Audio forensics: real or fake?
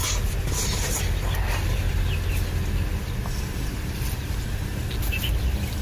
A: real